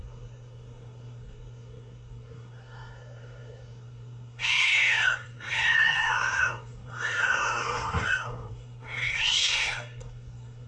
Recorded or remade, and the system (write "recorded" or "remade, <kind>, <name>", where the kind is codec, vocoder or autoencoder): remade, codec, SNAC